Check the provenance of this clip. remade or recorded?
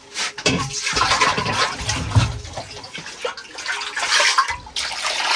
recorded